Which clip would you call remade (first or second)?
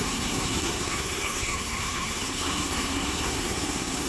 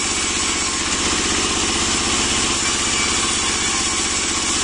first